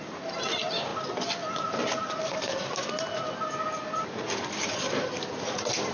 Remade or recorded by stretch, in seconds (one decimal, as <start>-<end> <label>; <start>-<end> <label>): 0.0-5.9 recorded